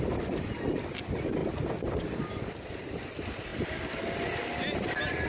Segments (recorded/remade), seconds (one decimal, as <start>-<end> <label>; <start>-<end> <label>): 0.0-1.4 recorded; 1.4-2.0 remade; 2.0-5.3 recorded

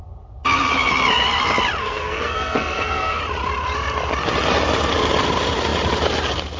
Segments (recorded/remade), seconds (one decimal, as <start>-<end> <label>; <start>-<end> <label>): 0.0-1.8 recorded; 1.8-3.2 remade; 3.2-6.6 recorded

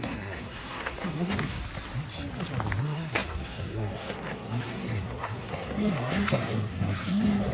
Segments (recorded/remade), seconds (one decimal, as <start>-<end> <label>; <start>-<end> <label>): 0.0-1.6 remade; 1.6-2.8 recorded; 2.8-7.5 remade

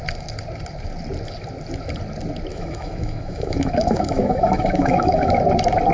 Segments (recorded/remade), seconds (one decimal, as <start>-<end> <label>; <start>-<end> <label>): 0.0-2.5 recorded; 2.5-5.4 remade; 5.4-5.9 recorded

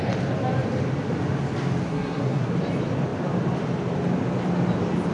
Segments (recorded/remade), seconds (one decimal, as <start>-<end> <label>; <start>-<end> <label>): 0.0-1.9 recorded; 1.9-2.5 remade; 2.5-5.1 recorded

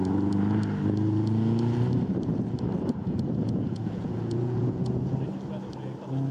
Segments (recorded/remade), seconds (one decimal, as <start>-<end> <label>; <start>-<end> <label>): 0.0-3.0 recorded; 3.0-4.9 remade; 4.9-6.3 recorded

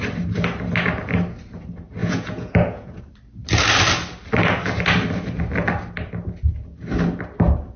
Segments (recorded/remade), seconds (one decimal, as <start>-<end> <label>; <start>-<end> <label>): 0.0-2.0 recorded; 2.0-3.0 remade; 3.0-7.8 recorded

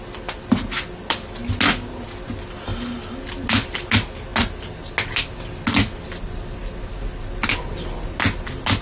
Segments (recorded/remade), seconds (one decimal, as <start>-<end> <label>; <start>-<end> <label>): 0.0-8.8 recorded